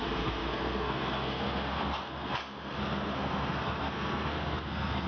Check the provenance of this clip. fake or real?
fake